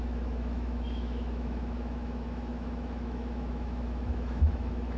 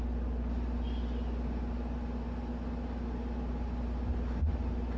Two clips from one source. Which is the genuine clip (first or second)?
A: second